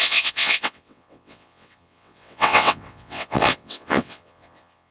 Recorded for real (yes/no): no